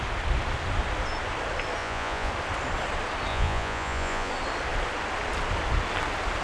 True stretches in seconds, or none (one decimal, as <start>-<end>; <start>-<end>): 0.0-1.8; 2.3-3.3; 4.3-6.4